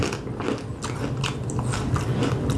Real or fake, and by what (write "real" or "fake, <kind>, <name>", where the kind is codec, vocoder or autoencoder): real